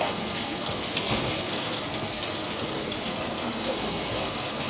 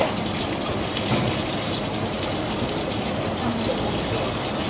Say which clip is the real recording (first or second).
second